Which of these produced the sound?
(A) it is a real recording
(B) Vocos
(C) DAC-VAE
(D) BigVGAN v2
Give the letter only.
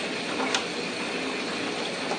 A